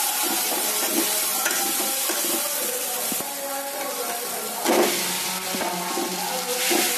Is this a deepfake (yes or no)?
no